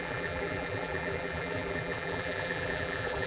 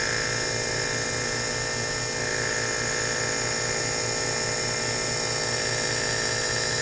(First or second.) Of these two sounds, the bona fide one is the second